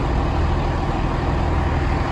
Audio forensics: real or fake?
real